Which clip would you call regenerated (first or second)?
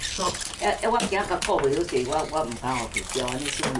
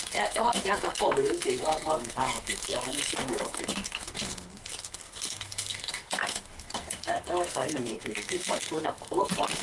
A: second